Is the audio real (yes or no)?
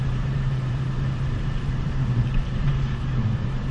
no